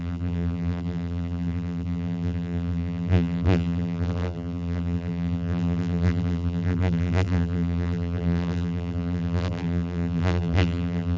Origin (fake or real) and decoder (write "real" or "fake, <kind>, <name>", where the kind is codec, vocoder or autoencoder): fake, vocoder, BigVGAN v2